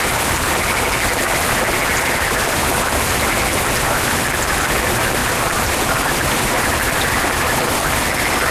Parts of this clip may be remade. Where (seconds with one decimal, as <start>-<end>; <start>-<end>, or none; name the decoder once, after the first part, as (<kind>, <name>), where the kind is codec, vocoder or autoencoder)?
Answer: 5.2-8.1 (vocoder, BigVGAN v2)